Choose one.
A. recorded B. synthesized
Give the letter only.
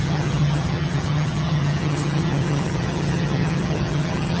B